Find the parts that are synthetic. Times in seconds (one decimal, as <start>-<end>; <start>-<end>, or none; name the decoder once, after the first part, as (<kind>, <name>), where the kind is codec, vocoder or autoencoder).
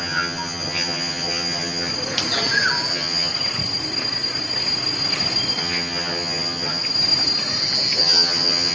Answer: 0.0-1.9 (vocoder, HiFi-GAN); 2.9-3.3; 5.6-6.8; 8.0-8.7